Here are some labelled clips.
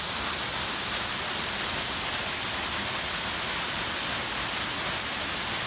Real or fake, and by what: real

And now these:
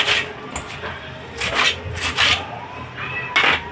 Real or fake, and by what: real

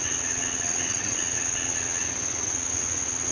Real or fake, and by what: fake, vocoder, WaveNeXt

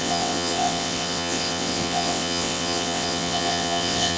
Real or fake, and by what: fake, vocoder, WaveNeXt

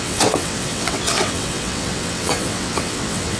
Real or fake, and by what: fake, vocoder, WaveNeXt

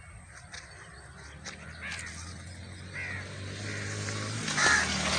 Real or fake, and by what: real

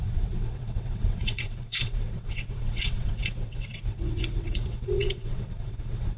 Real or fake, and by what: fake, vocoder, WaveNeXt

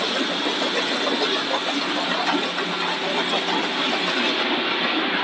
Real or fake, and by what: real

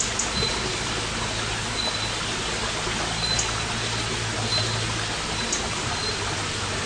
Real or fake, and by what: real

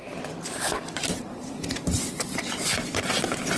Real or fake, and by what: real